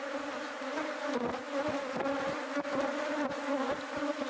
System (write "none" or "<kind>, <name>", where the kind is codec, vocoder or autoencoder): none